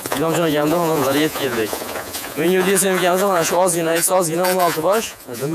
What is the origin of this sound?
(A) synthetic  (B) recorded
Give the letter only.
A